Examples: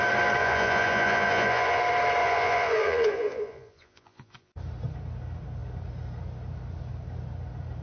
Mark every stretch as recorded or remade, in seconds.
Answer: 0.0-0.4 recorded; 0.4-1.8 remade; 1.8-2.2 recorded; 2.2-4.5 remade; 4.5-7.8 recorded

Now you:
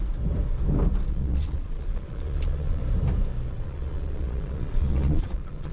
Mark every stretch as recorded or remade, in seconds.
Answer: 0.0-1.1 recorded; 1.1-2.8 remade; 2.8-3.5 recorded; 3.5-5.7 remade

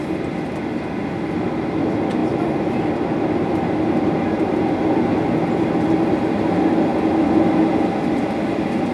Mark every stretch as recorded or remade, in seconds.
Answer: 0.0-8.9 recorded

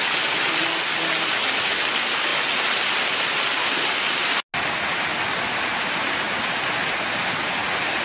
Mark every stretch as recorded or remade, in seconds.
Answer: 0.0-8.0 recorded

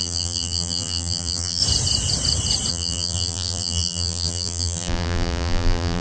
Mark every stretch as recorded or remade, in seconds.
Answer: 0.0-1.6 remade; 1.6-2.7 recorded; 2.7-6.0 remade